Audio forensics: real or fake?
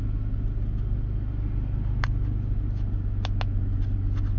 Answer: real